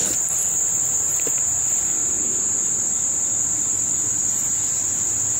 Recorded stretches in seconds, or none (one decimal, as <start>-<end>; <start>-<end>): 0.0-0.7